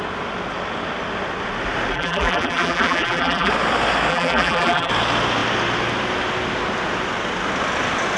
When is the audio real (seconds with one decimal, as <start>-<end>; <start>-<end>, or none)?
0.0-1.9; 3.5-4.1; 4.9-8.2